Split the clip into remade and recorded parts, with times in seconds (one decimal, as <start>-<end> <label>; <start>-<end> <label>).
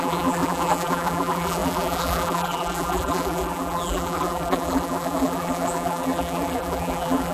0.0-7.3 remade